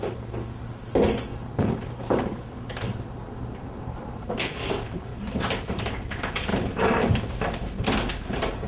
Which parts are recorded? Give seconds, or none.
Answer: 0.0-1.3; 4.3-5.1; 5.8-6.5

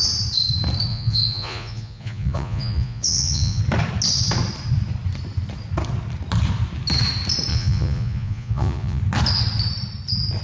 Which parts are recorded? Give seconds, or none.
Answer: 0.0-0.9; 3.6-7.5; 9.0-10.4

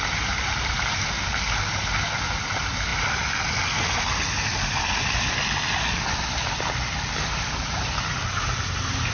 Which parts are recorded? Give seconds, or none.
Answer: 0.0-9.1

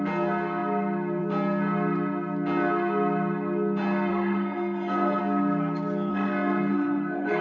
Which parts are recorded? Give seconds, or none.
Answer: 0.0-4.1; 5.2-6.1

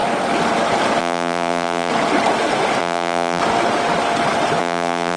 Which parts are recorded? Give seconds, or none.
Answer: 0.0-1.0; 1.9-2.8; 3.4-4.6

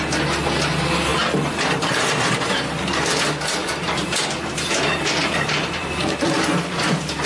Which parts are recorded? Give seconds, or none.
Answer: 0.0-1.1; 3.2-3.6

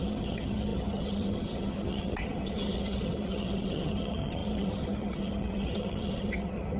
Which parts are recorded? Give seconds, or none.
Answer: none